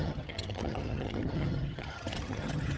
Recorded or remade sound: remade